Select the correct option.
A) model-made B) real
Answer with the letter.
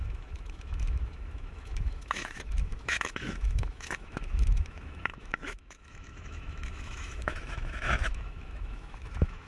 A